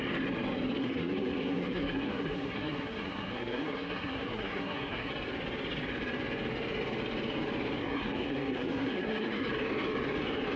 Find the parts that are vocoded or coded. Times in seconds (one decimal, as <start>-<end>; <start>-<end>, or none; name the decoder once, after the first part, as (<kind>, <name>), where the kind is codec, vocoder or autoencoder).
0.8-5.1 (codec, SNAC); 7.8-9.5